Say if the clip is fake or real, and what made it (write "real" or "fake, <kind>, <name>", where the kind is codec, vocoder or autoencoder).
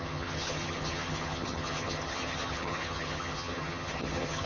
fake, vocoder, HiFi-GAN